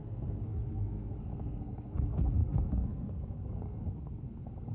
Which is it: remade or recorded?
remade